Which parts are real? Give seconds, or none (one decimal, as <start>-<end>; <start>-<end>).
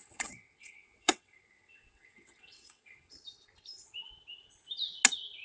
3.1-5.4